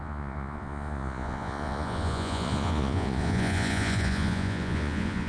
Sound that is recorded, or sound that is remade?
remade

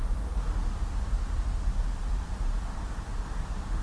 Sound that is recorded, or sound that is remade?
recorded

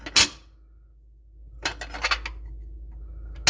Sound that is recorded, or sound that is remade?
recorded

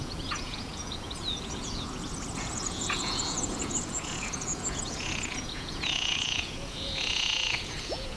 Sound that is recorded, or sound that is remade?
remade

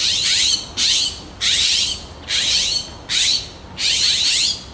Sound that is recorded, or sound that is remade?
recorded